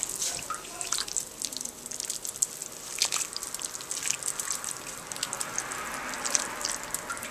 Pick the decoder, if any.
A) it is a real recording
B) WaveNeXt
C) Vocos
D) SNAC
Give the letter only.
A